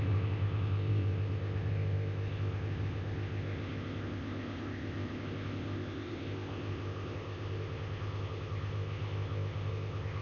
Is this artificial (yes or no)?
yes